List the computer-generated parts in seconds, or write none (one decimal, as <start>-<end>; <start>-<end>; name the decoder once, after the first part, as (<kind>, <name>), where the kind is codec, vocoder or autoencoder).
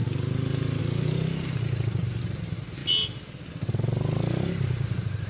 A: 0.8-2.8 (vocoder, BigVGAN v2); 4.5-5.3